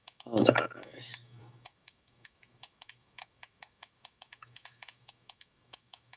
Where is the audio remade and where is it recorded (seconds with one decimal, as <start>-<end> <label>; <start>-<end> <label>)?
0.0-6.2 remade